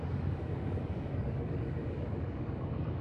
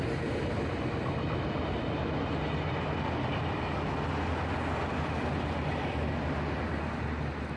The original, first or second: second